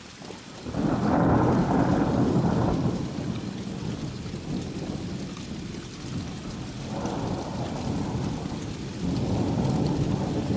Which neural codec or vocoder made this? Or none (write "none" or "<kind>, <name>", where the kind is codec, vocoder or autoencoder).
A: none